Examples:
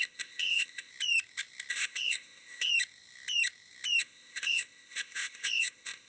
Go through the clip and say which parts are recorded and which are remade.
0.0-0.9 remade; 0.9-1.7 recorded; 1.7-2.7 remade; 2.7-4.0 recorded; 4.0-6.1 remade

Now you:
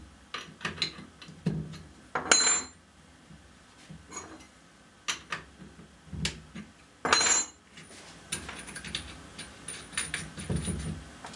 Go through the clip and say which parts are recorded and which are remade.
0.0-11.4 recorded

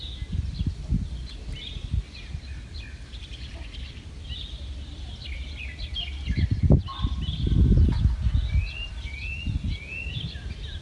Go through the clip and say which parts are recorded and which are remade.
0.0-1.9 recorded; 1.9-5.2 remade; 5.2-10.8 recorded

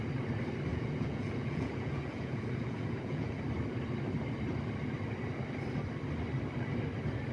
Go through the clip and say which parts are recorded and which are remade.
0.0-0.7 recorded; 0.7-3.4 remade; 3.4-7.3 recorded